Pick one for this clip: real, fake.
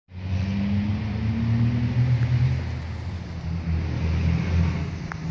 real